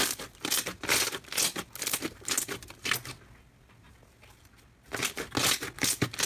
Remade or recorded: recorded